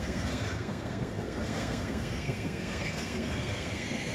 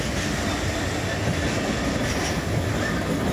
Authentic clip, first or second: second